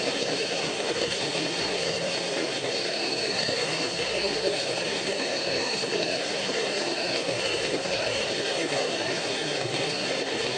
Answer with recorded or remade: remade